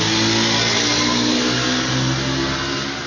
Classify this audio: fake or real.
real